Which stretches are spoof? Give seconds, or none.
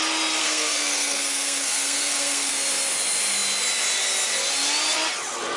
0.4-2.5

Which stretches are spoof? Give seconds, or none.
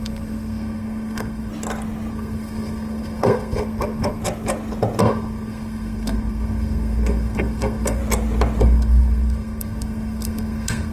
0.0-1.5; 2.1-4.2; 5.0-8.0; 8.6-10.9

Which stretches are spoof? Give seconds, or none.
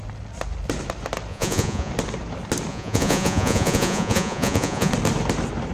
1.3-1.9; 2.7-4.9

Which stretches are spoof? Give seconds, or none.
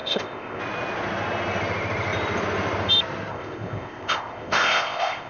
0.0-0.6; 3.3-5.3